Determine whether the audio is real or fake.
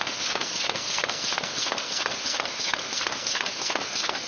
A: fake